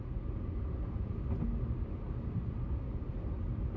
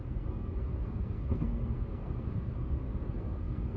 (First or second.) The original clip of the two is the first